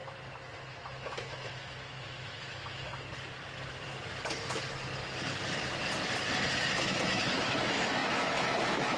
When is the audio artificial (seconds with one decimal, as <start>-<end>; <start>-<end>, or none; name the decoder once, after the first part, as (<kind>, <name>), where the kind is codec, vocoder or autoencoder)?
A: 0.6-2.9 (autoencoder, DAC-VAE); 6.8-9.0